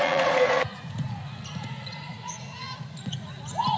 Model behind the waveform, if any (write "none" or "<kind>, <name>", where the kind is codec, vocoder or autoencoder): vocoder, Vocos